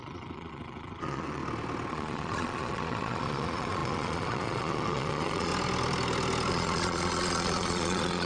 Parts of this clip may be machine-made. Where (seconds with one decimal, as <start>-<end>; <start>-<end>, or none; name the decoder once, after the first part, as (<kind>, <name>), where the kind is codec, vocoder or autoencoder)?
0.0-1.4 (vocoder, Vocos); 1.9-5.5; 6.5-8.3